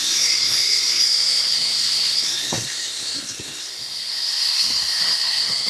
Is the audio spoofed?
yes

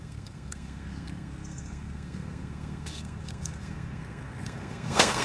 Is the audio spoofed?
yes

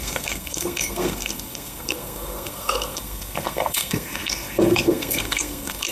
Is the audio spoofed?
yes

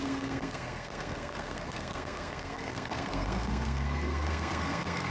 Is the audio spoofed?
yes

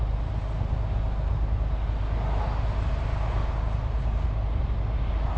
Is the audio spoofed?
no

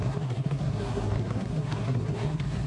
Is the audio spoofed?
yes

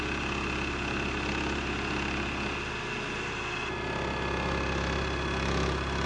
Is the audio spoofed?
no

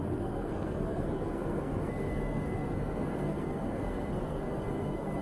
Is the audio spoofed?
yes